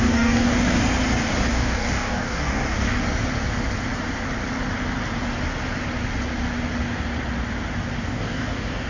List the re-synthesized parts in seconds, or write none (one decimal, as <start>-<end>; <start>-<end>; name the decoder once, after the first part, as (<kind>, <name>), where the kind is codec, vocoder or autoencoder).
0.0-0.8 (codec, DAC); 1.5-3.0; 8.0-8.9